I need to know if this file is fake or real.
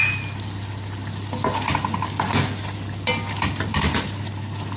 real